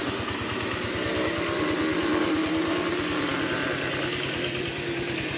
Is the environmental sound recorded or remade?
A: recorded